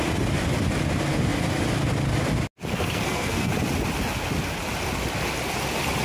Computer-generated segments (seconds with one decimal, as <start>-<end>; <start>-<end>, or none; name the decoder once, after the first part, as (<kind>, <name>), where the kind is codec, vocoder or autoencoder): 2.7-3.5 (codec, SNAC)